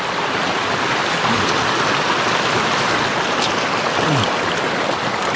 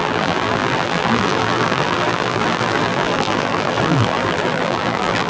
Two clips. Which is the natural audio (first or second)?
first